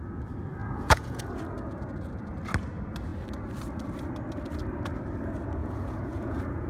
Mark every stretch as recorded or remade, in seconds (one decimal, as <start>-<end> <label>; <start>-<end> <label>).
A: 0.0-0.6 recorded; 0.6-1.2 remade; 1.2-5.6 recorded; 5.6-6.7 remade